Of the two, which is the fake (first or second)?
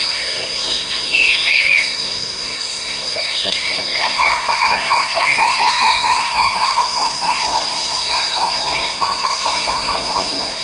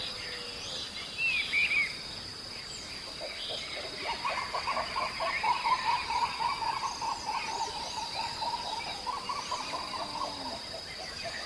first